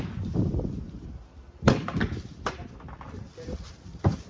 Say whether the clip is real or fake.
real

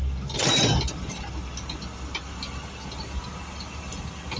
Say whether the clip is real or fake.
real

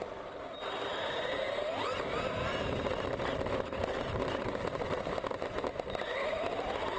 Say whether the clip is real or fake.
real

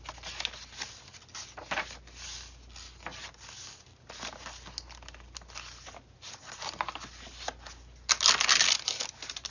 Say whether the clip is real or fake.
real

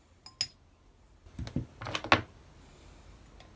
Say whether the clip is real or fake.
real